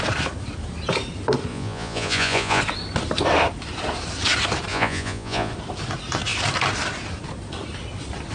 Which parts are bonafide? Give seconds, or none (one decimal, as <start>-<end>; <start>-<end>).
0.0-1.5; 2.6-4.7; 5.5-8.3